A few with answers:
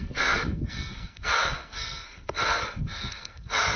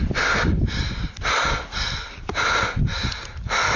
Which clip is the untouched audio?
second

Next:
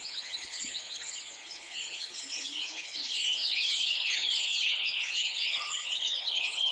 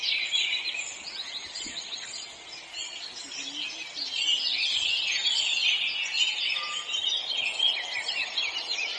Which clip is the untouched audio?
second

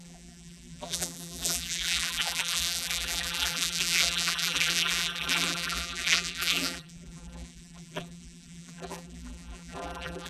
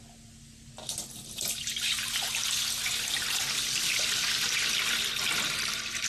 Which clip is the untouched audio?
second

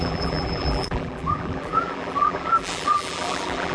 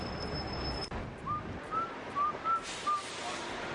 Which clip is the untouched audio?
second